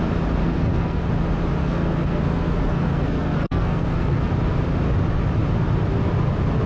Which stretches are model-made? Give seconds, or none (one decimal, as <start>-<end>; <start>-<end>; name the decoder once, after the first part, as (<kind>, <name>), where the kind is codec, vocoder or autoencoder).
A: 0.4-1.0 (codec, SNAC); 1.6-4.3